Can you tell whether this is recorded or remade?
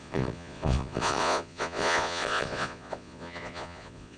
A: remade